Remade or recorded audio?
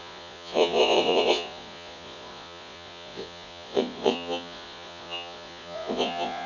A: remade